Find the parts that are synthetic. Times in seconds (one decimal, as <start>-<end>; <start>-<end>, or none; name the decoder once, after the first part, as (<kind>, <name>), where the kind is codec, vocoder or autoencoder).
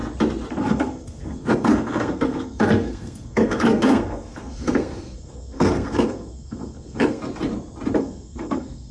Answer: 0.5-7.2 (codec, SNAC); 8.0-8.9